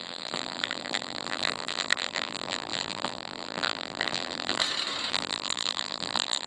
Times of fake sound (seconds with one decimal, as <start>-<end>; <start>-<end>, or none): 0.0-4.6; 5.1-6.5